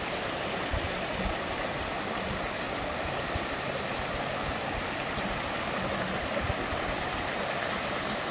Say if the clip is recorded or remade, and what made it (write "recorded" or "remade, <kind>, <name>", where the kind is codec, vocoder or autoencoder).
recorded